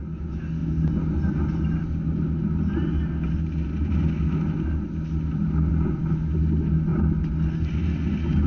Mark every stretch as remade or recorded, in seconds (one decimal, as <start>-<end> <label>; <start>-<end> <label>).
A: 0.0-8.5 recorded